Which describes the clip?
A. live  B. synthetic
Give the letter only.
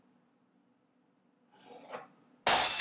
A